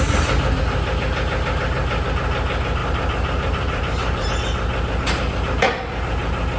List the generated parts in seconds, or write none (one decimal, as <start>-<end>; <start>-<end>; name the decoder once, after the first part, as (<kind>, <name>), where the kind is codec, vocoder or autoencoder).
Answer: 2.8-4.3 (vocoder, BigVGAN v2)